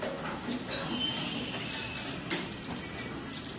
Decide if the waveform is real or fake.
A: real